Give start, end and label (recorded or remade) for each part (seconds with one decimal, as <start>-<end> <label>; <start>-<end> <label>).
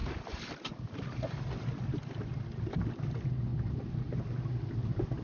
0.0-5.2 recorded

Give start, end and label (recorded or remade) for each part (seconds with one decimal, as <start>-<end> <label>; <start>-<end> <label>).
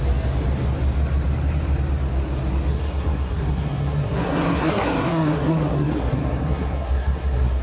0.0-2.7 recorded; 2.7-7.6 remade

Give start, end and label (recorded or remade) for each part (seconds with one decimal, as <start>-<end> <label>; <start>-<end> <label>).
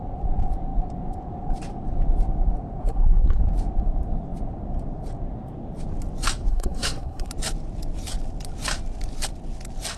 0.0-2.8 recorded; 2.8-3.4 remade; 3.4-6.5 recorded; 6.5-7.3 remade; 7.3-10.0 recorded